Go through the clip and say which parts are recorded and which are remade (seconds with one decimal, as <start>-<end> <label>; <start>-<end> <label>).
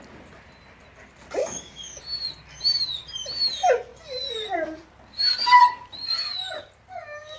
0.0-1.4 recorded; 1.4-2.0 remade; 2.0-7.4 recorded